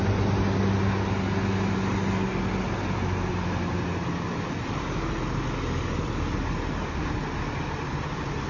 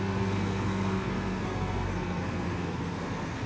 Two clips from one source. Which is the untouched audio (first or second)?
first